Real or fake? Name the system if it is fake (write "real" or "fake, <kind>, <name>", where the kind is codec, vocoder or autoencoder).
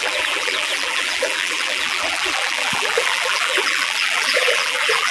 fake, vocoder, BigVGAN v2